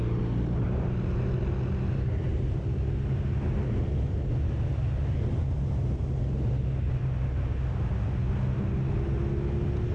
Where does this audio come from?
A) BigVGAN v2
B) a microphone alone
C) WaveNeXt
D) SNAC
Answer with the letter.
B